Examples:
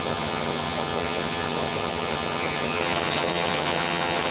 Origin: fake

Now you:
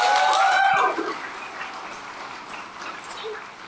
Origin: real